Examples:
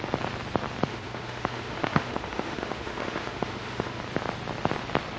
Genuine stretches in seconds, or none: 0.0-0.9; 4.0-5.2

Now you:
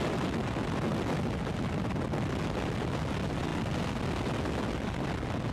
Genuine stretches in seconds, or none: 0.0-5.5

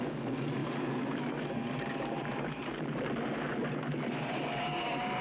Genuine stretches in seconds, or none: 0.0-5.2

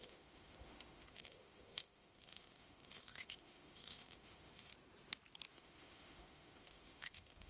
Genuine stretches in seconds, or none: 4.7-5.5

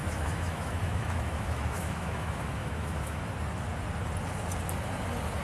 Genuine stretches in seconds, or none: 3.2-5.4